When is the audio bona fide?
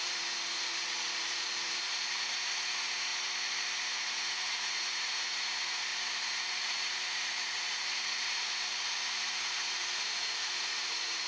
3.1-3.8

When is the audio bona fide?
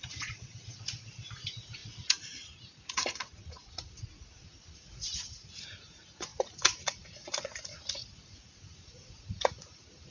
none